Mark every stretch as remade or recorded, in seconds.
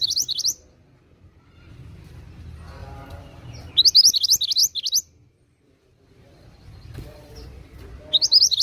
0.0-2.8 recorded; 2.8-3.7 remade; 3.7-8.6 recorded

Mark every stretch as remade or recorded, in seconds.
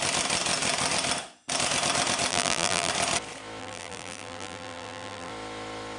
0.0-2.3 recorded; 2.3-2.9 remade; 2.9-3.6 recorded; 3.6-5.3 remade; 5.3-6.0 recorded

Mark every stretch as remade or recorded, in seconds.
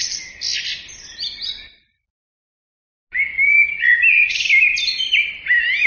0.0-0.5 recorded; 0.5-2.7 remade; 2.7-5.9 recorded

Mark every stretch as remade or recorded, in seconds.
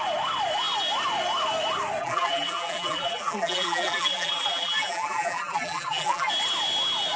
0.0-2.0 recorded; 2.0-6.3 remade; 6.3-7.2 recorded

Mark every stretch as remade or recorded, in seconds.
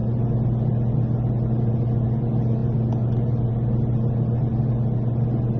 0.0-5.6 recorded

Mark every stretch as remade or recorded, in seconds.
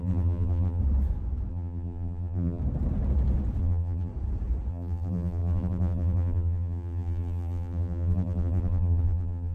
0.0-0.8 remade; 0.8-1.5 recorded; 1.5-2.6 remade; 2.6-3.6 recorded; 3.6-4.1 remade; 4.1-4.7 recorded; 4.7-9.5 remade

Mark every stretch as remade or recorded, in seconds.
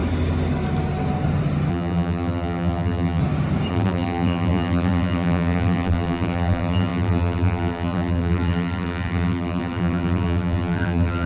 0.0-1.7 recorded; 1.7-3.2 remade; 3.2-3.7 recorded; 3.7-11.3 remade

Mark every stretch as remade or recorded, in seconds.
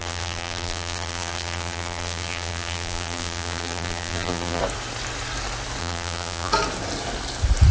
0.0-4.6 remade; 4.6-5.8 recorded; 5.8-6.5 remade; 6.5-7.7 recorded